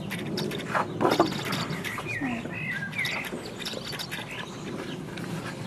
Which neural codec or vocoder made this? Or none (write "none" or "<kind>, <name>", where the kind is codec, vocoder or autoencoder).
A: none